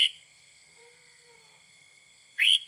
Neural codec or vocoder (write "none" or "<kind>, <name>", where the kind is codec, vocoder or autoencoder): codec, SNAC